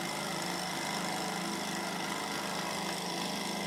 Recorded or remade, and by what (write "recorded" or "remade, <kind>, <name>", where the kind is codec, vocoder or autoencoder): recorded